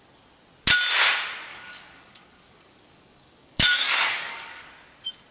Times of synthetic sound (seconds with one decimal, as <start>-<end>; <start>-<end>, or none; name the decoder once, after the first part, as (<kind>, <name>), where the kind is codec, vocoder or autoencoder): 1.5-4.7 (codec, DAC)